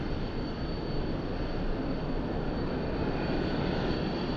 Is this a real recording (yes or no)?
yes